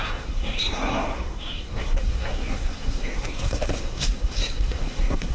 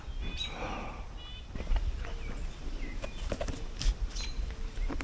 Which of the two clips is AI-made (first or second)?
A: first